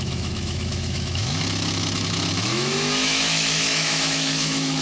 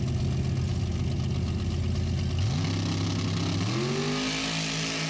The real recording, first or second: second